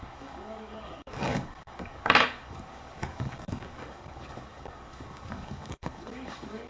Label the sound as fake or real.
fake